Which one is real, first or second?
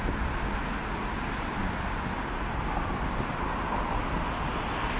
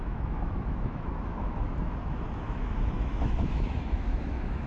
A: first